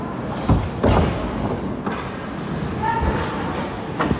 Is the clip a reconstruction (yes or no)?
no